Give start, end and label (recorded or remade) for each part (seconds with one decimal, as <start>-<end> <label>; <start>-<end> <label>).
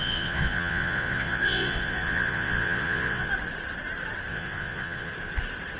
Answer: 0.0-3.3 remade; 3.3-4.3 recorded; 4.3-5.1 remade; 5.1-5.8 recorded